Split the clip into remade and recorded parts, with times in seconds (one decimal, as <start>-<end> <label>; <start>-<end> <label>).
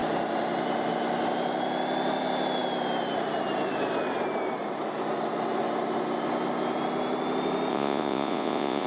0.0-7.7 recorded; 7.7-8.9 remade